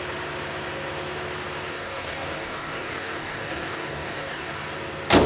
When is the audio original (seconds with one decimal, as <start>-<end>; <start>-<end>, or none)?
0.0-1.7; 4.5-5.3